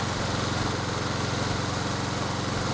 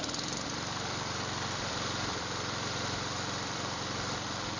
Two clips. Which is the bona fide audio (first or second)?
first